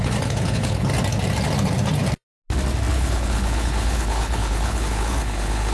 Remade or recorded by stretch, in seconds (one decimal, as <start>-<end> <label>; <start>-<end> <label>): 0.0-0.9 remade; 0.9-2.9 recorded; 2.9-5.7 remade